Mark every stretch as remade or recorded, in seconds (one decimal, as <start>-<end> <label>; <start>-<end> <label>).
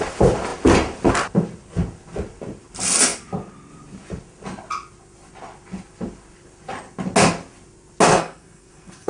0.0-8.1 recorded; 8.1-9.1 remade